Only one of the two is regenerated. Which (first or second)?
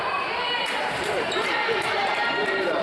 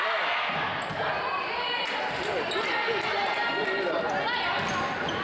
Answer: first